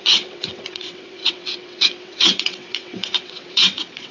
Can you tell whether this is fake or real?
fake